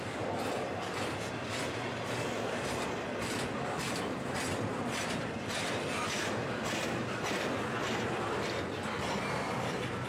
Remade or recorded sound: recorded